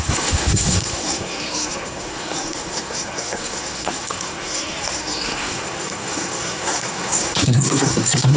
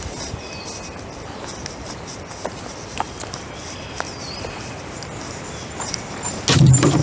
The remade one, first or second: first